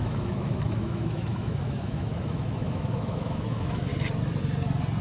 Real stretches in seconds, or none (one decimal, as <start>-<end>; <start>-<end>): 3.9-5.0